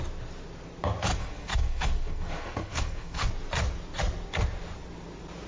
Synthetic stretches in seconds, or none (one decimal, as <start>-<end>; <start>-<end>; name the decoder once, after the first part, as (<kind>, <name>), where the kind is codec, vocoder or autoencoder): 1.1-3.3 (codec, SNAC)